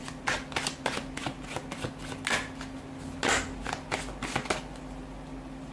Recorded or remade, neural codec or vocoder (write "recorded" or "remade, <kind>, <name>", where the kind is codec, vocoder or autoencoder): recorded